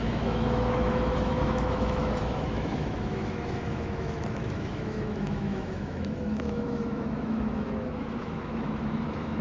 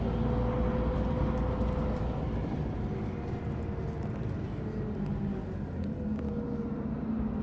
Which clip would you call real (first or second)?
second